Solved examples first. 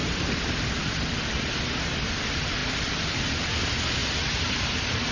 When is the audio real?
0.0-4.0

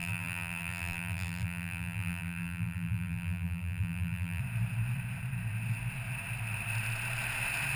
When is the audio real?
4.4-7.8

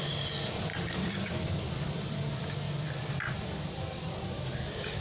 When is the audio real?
0.0-0.7; 3.7-5.0

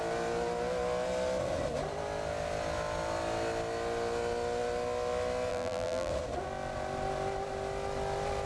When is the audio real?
0.0-5.5; 6.1-8.4

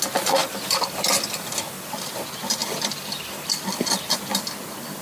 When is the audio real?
0.0-0.4; 1.9-2.6; 3.9-5.0

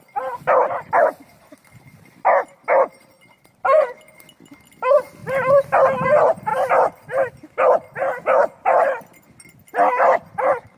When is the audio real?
5.2-5.9